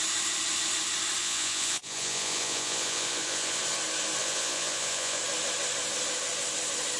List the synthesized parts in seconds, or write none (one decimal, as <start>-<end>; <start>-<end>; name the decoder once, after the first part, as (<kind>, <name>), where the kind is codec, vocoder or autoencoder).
1.2-3.6 (vocoder, Vocos); 4.2-5.2